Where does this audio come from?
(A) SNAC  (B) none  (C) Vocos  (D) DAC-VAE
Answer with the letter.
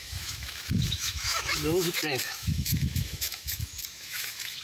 D